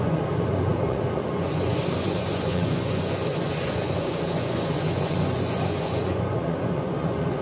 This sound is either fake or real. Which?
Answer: fake